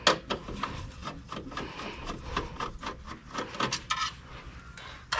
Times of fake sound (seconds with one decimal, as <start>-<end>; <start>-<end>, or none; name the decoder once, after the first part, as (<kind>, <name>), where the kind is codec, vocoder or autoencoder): none

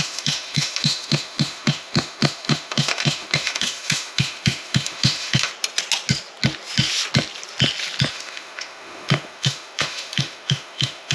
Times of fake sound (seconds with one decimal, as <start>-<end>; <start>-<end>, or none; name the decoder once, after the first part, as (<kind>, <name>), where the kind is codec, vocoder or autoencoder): 0.0-5.5 (autoencoder, DAC-VAE); 8.1-11.1

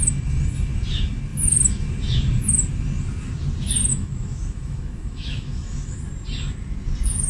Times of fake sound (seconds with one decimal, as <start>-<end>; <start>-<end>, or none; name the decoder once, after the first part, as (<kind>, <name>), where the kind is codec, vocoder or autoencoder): 3.9-6.0 (autoencoder, DAC-VAE)

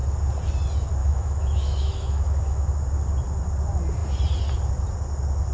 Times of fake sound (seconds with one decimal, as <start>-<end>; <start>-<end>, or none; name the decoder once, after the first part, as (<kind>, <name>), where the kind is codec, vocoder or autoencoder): 1.0-2.8 (autoencoder, DAC-VAE)

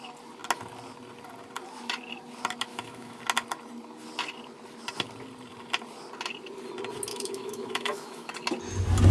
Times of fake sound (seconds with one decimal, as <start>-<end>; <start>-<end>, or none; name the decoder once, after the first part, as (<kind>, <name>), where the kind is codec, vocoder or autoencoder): 2.7-3.2 (autoencoder, DAC-VAE); 7.1-8.3

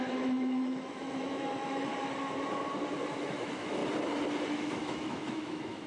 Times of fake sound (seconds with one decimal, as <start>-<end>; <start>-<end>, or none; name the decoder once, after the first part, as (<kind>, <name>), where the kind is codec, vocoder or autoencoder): 0.0-1.9 (autoencoder, DAC-VAE); 3.1-3.8; 4.5-5.9

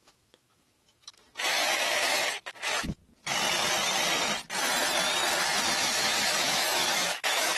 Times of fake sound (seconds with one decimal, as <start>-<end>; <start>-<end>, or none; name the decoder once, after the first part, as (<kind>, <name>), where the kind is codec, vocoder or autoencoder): 0.0-3.0 (autoencoder, DAC-VAE); 5.7-7.6